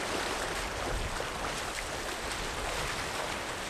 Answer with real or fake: real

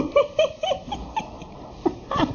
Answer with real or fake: fake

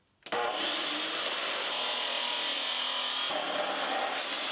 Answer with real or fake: real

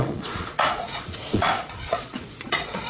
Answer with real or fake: fake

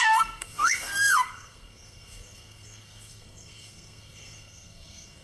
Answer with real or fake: fake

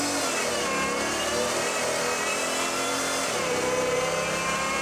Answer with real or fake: fake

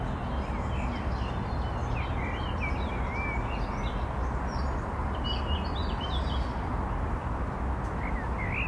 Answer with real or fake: real